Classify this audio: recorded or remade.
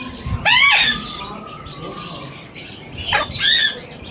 recorded